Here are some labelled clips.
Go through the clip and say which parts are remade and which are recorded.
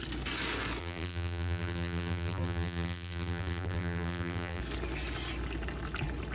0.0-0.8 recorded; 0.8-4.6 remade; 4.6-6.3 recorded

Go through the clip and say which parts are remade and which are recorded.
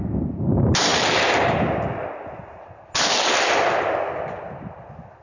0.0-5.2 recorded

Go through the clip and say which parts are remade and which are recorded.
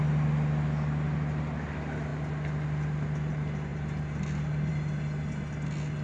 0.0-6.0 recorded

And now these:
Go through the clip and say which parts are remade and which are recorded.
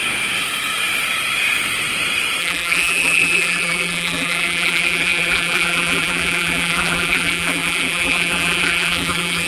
0.0-2.4 recorded; 2.4-9.5 remade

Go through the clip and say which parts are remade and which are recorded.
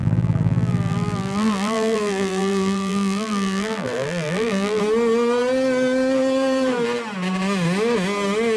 0.0-4.8 remade; 4.8-8.6 recorded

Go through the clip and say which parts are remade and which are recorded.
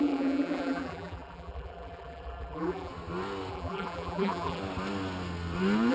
0.0-2.9 remade; 2.9-3.5 recorded; 3.5-4.6 remade; 4.6-5.9 recorded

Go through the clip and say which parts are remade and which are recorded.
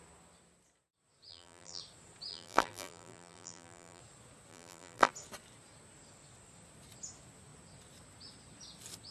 0.0-1.3 recorded; 1.3-1.8 remade; 1.8-2.3 recorded; 2.3-4.0 remade; 4.0-4.5 recorded; 4.5-5.1 remade; 5.1-9.1 recorded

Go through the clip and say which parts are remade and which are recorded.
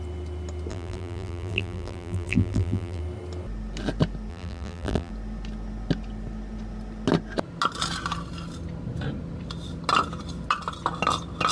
0.0-0.7 recorded; 0.7-3.0 remade; 3.0-4.3 recorded; 4.3-5.1 remade; 5.1-11.5 recorded